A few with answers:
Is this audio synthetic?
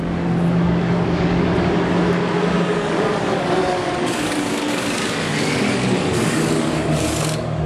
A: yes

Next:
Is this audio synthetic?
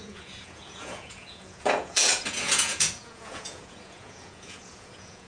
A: yes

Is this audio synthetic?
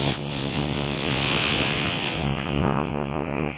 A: yes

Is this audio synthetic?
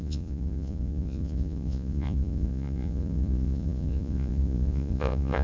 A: yes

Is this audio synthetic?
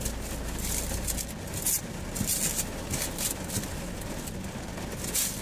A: no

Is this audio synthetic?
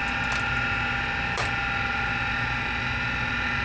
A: no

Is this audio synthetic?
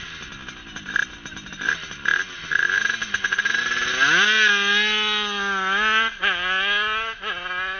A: no